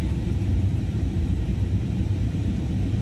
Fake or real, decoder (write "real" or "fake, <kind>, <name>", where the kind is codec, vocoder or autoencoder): fake, vocoder, BigVGAN v2